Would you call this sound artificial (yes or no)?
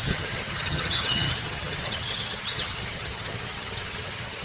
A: yes